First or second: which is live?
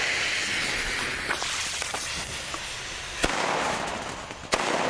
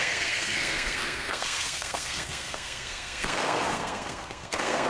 first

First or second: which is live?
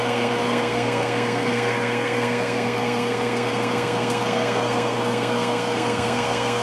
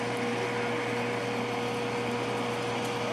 second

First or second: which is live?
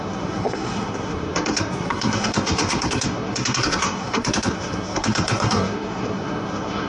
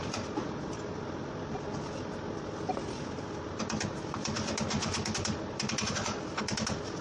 second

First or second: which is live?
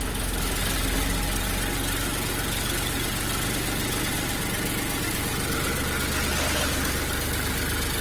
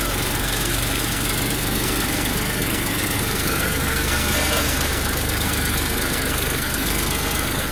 first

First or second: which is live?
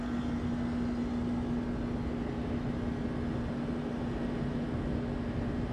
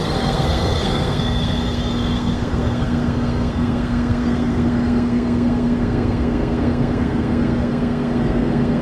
first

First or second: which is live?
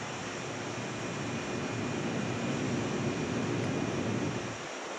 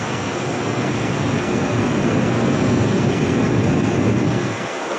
first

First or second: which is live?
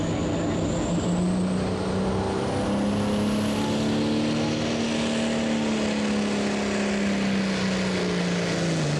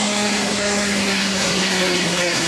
first